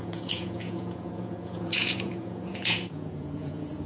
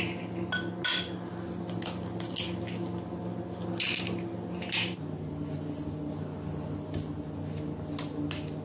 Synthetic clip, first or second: first